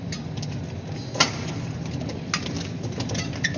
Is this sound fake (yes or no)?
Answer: no